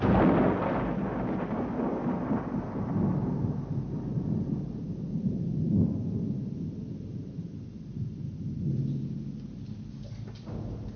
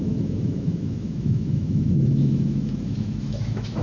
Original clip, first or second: first